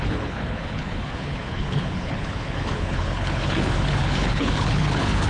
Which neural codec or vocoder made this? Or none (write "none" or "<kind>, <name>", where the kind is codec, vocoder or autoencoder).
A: codec, HILCodec